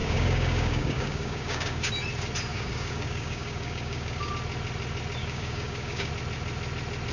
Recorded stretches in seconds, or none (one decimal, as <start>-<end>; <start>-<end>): 1.9-2.5; 4.3-5.2; 6.1-7.1